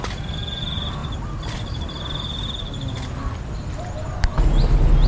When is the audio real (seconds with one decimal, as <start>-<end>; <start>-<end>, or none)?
0.0-5.1